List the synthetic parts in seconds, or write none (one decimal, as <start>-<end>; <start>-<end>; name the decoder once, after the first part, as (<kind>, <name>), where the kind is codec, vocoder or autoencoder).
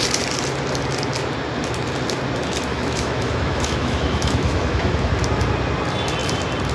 2.7-5.1 (autoencoder, DAC-VAE)